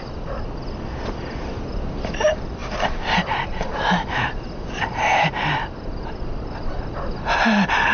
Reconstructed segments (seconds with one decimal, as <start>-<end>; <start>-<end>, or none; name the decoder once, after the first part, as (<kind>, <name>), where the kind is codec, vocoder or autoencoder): 2.6-3.7 (vocoder, BigVGAN v2)

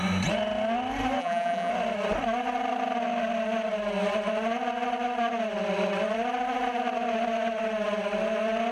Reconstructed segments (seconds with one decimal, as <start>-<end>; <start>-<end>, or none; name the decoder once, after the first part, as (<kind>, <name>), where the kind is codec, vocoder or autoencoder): 1.2-1.7 (vocoder, BigVGAN v2)